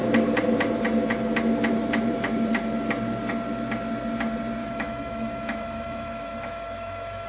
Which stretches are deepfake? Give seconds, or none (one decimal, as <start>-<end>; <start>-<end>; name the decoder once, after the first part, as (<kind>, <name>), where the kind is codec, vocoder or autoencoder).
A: 4.6-7.3 (autoencoder, DAC-VAE)